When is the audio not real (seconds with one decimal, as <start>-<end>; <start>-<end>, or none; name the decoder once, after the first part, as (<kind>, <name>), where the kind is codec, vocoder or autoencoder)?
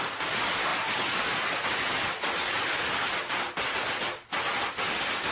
none